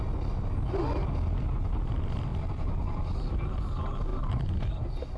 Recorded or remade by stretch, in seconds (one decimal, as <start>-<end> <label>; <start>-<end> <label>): 0.0-2.3 recorded; 2.3-3.0 remade; 3.0-4.1 recorded; 4.1-5.2 remade